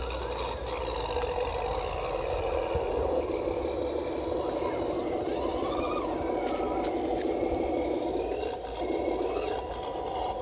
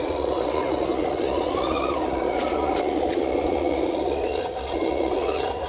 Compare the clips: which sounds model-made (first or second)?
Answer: second